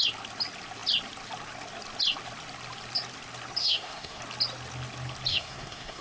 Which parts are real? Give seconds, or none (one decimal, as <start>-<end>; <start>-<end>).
0.0-3.6; 4.2-5.3